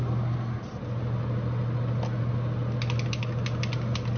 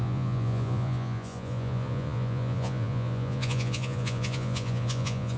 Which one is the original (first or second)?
first